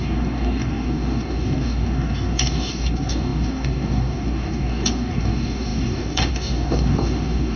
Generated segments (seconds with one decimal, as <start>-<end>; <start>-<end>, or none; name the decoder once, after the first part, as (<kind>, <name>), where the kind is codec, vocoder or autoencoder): 0.0-7.6 (codec, DAC)